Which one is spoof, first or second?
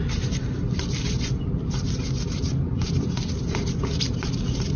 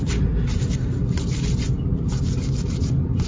first